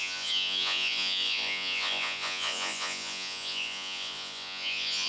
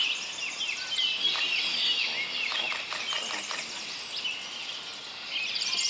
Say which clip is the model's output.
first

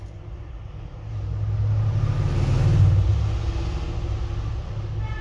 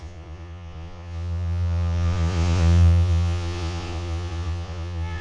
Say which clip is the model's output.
second